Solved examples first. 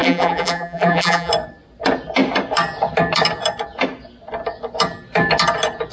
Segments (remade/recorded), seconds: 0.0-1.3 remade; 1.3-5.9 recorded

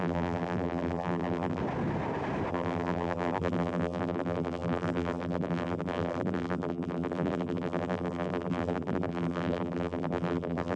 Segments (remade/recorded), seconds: 0.0-1.6 remade; 1.6-2.5 recorded; 2.5-10.8 remade

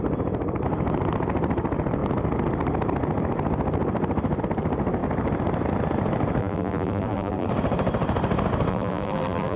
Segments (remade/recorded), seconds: 0.0-6.4 recorded; 6.4-7.5 remade; 7.5-8.7 recorded; 8.7-9.6 remade

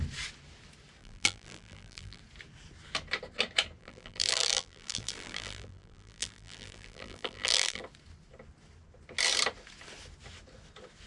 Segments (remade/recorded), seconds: 0.0-1.0 recorded; 1.0-2.2 remade; 2.2-3.8 recorded; 3.8-7.8 remade; 7.8-11.1 recorded

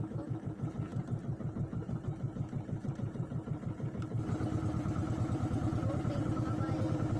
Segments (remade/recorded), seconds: 0.0-7.2 remade

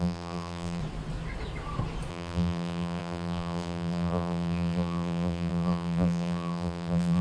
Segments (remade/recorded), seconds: 0.0-0.8 remade; 0.8-2.1 recorded; 2.1-7.2 remade

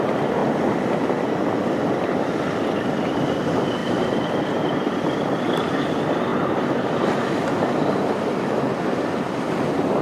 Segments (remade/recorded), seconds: 0.0-3.8 recorded; 3.8-5.4 remade; 5.4-10.0 recorded